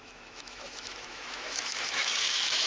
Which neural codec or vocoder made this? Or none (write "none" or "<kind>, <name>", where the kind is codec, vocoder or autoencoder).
autoencoder, DAC-VAE